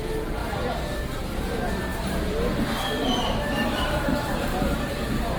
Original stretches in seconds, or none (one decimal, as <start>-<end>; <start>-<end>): 0.0-0.4; 1.2-1.9; 2.5-3.0; 4.9-5.4